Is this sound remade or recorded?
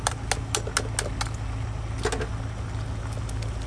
recorded